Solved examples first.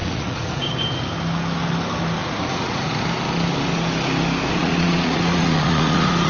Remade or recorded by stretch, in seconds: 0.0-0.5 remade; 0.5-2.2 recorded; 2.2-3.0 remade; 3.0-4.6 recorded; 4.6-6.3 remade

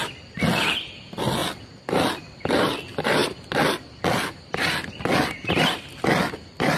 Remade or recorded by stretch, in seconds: 0.0-6.8 recorded

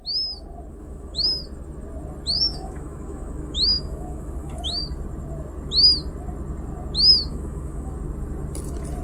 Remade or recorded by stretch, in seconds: 0.0-0.7 recorded; 0.7-1.4 remade; 1.4-2.5 recorded; 2.5-4.8 remade; 4.8-7.3 recorded; 7.3-7.9 remade; 7.9-9.0 recorded

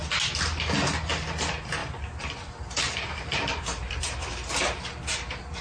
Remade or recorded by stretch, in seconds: 0.0-5.6 recorded

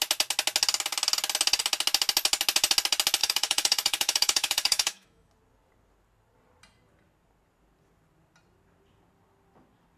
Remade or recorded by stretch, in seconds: 0.0-3.2 recorded; 3.2-5.3 remade; 5.3-10.0 recorded